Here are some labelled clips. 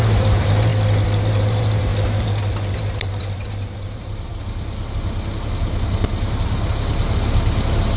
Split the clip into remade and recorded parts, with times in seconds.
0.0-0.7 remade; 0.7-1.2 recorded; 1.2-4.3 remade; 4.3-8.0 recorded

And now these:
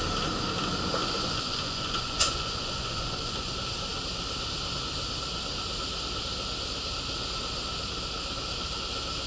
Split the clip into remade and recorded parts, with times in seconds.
0.0-1.0 recorded; 1.0-3.5 remade; 3.5-9.3 recorded

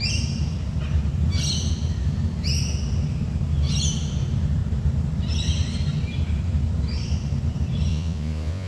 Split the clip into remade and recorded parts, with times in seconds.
0.0-7.9 recorded; 7.9-8.7 remade

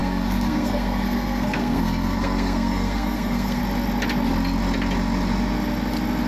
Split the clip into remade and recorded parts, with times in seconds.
0.0-3.6 remade; 3.6-6.3 recorded